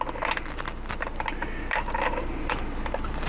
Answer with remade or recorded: recorded